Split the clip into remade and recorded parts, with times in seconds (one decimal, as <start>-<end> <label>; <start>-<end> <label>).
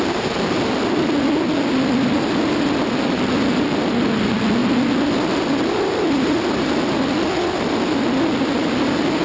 0.0-9.2 recorded